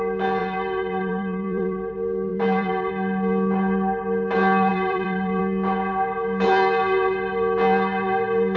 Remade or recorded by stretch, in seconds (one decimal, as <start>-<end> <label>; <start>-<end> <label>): 0.0-0.4 recorded; 0.4-1.9 remade; 1.9-2.3 recorded; 2.3-2.9 remade; 2.9-4.7 recorded; 4.7-5.4 remade; 5.4-8.6 recorded